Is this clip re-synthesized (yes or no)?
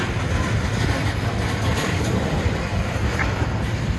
yes